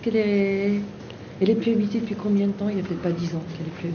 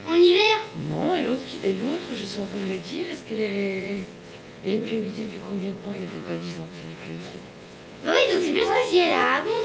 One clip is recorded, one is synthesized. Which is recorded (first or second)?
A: first